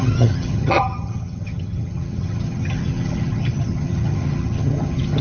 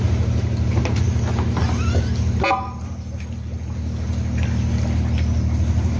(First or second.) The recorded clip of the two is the second